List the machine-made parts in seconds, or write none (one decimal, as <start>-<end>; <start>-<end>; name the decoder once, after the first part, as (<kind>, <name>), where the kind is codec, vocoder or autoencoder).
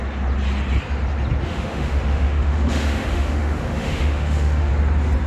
1.5-4.7 (autoencoder, DAC-VAE)